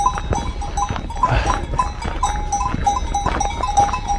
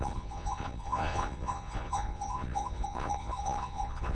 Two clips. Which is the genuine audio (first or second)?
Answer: first